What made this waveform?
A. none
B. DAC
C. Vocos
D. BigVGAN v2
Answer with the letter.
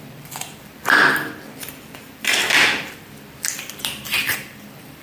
D